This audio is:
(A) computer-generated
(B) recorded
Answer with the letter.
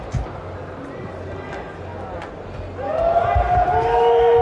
B